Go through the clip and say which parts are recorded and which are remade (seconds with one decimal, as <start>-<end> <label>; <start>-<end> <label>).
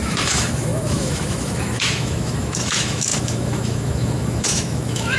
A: 0.0-5.2 remade